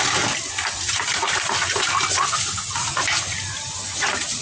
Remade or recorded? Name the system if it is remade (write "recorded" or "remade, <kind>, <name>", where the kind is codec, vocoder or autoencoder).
recorded